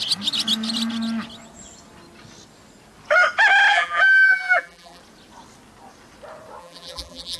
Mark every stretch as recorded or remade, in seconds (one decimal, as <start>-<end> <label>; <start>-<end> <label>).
0.0-3.7 recorded; 3.7-5.0 remade; 5.0-6.6 recorded; 6.6-7.4 remade